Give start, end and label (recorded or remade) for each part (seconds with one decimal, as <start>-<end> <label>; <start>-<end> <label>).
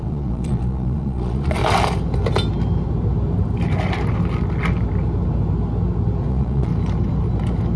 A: 0.0-1.6 remade; 1.6-6.3 recorded; 6.3-6.7 remade; 6.7-7.8 recorded